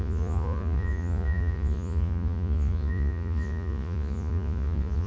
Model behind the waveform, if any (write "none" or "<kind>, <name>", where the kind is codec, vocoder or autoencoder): vocoder, Vocos